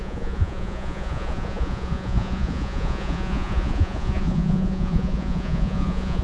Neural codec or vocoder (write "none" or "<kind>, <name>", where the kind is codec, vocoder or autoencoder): vocoder, Vocos